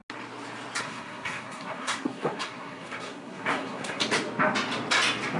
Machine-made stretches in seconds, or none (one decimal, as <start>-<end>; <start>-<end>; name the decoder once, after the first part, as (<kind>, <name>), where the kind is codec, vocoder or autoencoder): 0.8-4.0 (codec, SNAC)